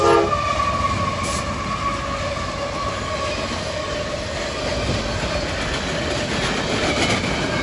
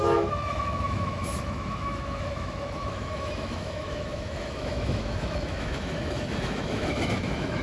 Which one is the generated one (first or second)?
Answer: second